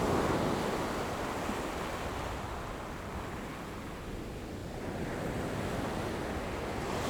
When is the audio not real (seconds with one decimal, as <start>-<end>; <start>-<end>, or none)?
none